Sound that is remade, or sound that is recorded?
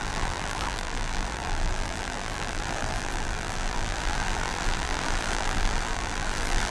remade